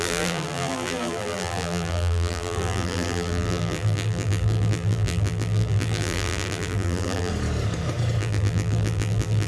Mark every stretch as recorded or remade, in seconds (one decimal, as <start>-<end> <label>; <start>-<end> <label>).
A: 0.0-7.3 remade; 7.3-8.2 recorded; 8.2-9.5 remade